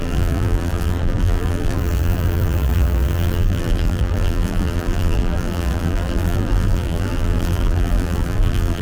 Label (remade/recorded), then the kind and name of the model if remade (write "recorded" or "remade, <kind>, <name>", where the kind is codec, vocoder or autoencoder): remade, vocoder, BigVGAN v2